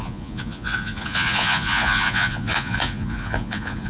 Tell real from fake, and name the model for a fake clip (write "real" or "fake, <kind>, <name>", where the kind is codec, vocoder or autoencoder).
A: fake, vocoder, Vocos